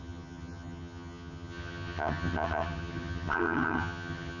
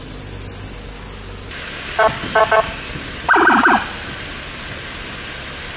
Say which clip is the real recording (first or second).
second